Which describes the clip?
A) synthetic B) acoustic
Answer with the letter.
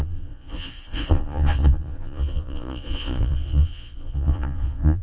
A